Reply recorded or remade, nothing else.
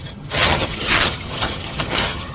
remade